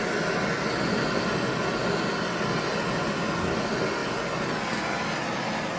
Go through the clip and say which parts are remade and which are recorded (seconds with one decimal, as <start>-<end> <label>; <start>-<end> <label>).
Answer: 0.0-5.8 recorded